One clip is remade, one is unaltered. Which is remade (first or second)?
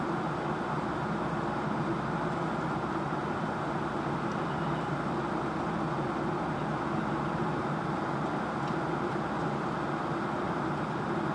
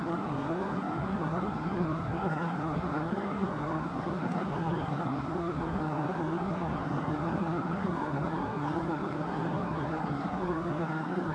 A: second